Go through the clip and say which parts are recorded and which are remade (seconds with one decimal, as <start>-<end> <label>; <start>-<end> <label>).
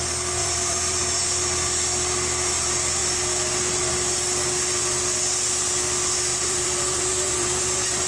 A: 0.0-0.4 recorded; 0.4-1.0 remade; 1.0-6.3 recorded; 6.3-8.1 remade